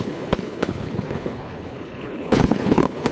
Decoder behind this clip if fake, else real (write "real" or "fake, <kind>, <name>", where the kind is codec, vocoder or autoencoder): fake, codec, HILCodec